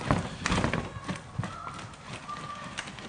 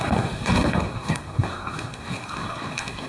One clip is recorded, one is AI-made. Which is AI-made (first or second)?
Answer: second